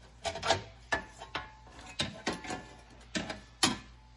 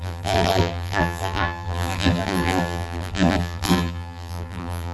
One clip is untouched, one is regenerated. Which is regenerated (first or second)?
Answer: second